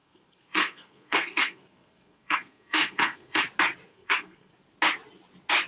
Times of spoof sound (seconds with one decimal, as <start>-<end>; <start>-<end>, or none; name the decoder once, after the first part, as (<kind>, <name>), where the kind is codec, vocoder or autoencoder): 0.0-3.4 (codec, SNAC); 3.9-4.5